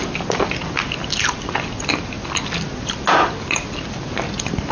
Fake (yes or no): no